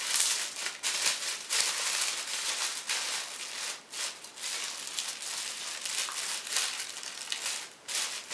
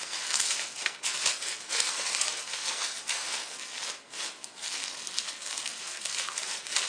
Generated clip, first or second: second